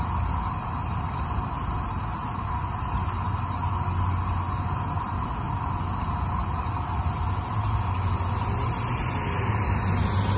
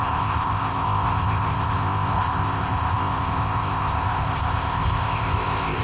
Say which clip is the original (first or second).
first